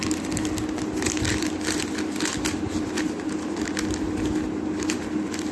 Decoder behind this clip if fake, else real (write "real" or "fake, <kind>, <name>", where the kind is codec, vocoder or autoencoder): real